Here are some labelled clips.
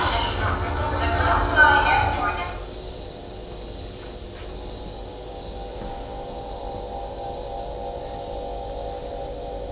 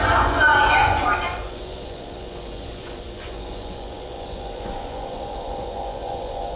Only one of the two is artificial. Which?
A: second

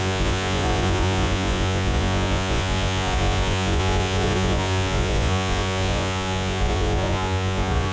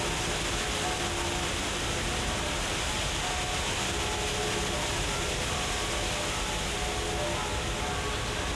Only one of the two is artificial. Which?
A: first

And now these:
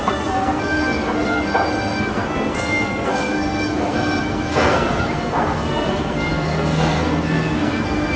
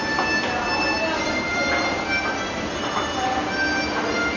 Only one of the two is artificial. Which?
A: first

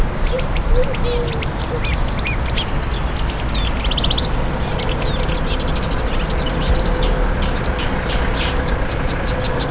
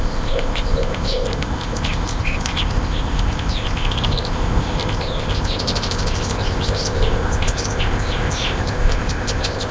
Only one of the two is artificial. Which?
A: second